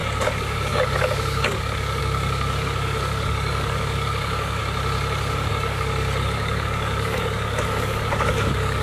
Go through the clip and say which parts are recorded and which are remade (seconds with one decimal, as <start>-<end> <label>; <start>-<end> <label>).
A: 0.0-4.6 remade; 4.6-5.5 recorded; 5.5-8.8 remade